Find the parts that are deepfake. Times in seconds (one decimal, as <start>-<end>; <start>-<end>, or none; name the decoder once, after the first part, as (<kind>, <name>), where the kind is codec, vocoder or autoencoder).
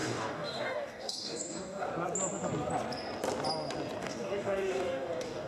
0.0-1.9 (codec, DAC); 4.0-5.5